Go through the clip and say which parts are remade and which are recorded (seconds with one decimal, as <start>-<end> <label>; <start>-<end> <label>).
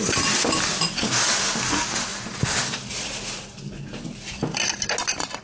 0.0-5.4 recorded